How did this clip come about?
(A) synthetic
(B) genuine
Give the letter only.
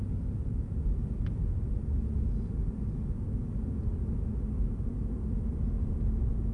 B